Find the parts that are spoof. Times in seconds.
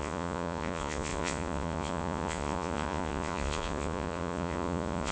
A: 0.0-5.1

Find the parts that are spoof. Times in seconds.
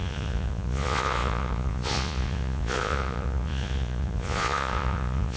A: 0.0-5.4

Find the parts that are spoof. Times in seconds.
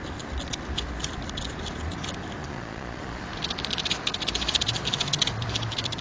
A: 2.4-3.2